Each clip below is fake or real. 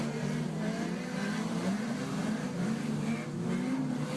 real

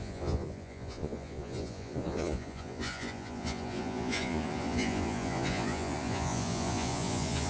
fake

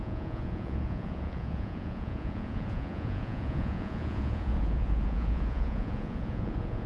fake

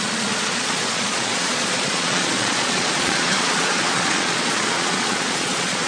fake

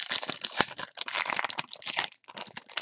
real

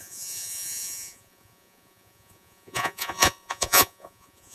fake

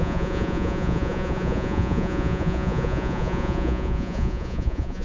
fake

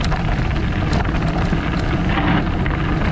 real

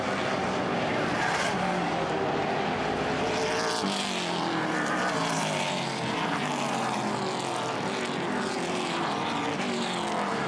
real